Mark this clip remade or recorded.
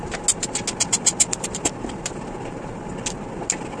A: recorded